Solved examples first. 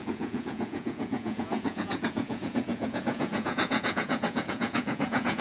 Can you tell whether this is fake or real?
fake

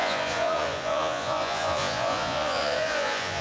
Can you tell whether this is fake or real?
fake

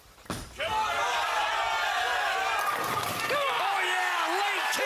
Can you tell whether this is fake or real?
real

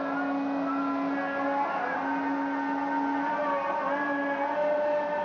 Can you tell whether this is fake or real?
real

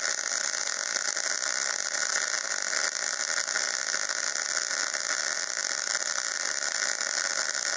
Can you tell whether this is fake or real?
real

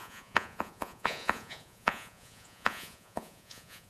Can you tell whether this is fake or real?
fake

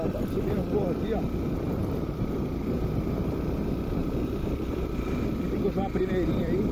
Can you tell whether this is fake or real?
fake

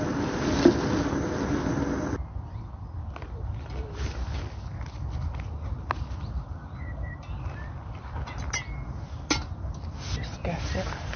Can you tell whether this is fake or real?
real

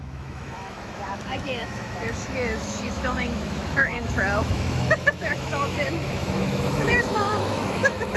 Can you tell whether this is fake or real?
fake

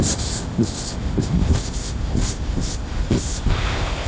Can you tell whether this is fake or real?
fake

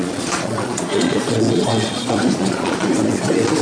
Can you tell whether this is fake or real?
fake